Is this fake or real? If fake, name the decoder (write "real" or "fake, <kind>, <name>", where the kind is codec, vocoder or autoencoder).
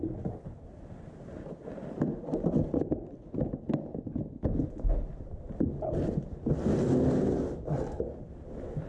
real